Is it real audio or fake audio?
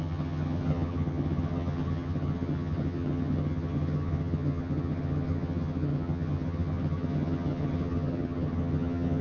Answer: fake